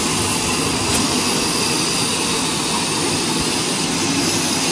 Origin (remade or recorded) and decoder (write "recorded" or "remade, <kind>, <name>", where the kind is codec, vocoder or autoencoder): recorded